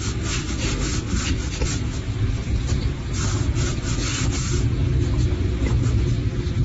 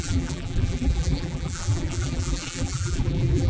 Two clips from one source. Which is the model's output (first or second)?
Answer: second